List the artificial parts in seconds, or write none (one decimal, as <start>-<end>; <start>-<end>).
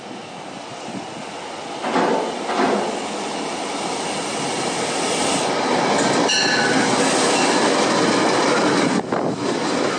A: 2.1-6.4